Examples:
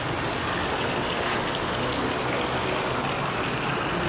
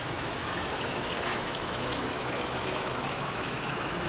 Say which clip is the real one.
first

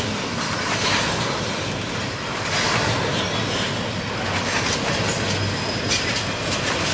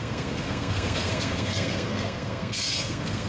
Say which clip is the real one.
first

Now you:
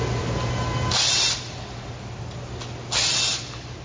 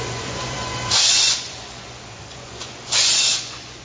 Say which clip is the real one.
first